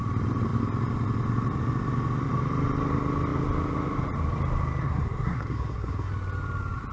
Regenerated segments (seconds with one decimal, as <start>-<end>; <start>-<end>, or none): 4.8-6.1